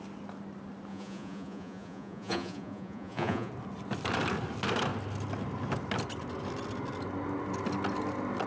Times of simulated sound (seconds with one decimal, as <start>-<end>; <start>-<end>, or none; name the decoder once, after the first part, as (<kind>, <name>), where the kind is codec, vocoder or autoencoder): 0.9-3.5 (vocoder, Vocos)